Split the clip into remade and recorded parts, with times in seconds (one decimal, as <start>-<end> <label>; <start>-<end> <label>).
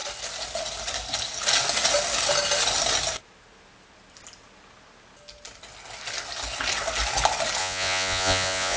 0.0-7.6 recorded; 7.6-8.8 remade